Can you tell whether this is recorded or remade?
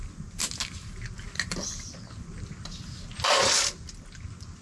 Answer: recorded